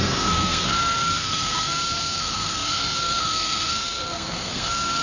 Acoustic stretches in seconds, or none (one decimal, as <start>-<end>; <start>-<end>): none